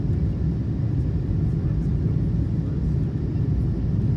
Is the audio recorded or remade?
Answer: recorded